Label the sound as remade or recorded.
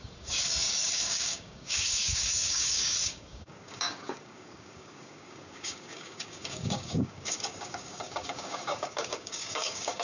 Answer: remade